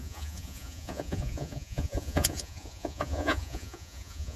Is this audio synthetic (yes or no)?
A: yes